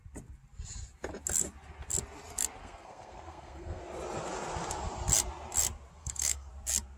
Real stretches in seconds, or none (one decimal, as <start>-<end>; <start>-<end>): 0.0-2.6; 3.8-6.0; 6.5-7.0